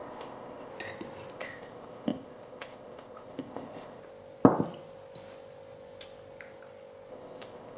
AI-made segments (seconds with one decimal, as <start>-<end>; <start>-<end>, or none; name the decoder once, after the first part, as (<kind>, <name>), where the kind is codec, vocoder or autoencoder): 0.0-0.7 (codec, ZipCodec); 1.3-4.0; 7.1-7.8